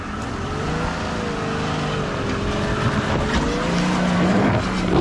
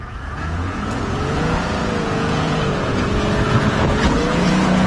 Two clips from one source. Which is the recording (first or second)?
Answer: first